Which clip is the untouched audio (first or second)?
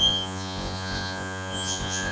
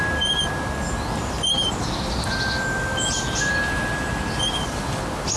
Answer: second